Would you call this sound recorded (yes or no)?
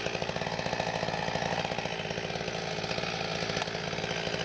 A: yes